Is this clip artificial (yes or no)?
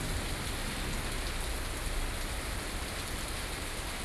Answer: no